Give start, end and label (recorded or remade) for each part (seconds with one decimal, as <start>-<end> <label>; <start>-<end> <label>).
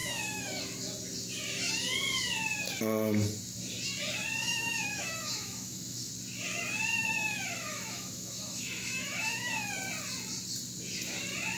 0.0-0.6 remade; 0.6-4.4 recorded; 4.4-6.1 remade; 6.1-6.9 recorded; 6.9-9.7 remade; 9.7-11.6 recorded